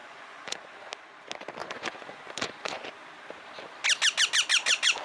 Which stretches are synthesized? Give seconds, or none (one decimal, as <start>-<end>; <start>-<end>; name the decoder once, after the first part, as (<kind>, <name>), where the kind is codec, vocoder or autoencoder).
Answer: 0.0-0.7 (vocoder, Vocos); 1.6-2.9